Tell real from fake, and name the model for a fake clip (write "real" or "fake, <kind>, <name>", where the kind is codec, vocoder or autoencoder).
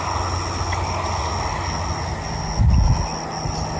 real